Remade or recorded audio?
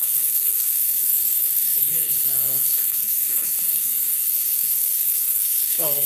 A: remade